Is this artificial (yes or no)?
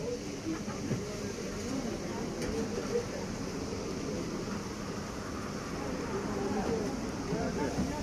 no